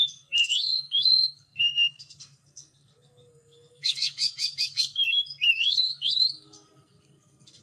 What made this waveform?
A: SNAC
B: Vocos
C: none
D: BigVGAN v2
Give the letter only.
A